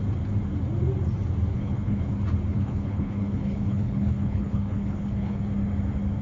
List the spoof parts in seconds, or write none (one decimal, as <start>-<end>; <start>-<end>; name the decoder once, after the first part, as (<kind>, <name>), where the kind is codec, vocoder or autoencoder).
1.5-2.1 (codec, HILCodec); 2.5-5.4